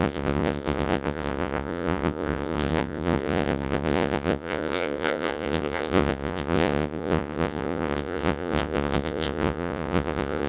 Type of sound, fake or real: fake